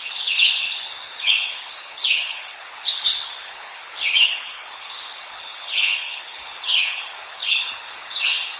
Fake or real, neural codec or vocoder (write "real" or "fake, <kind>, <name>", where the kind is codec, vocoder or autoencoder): fake, codec, HILCodec